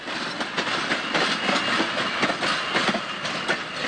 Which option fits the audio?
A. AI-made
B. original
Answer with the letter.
B